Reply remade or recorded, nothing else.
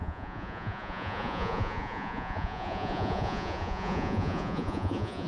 remade